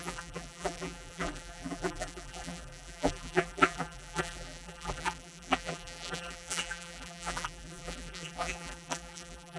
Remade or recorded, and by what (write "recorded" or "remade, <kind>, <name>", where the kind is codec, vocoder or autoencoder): remade, vocoder, BigVGAN v2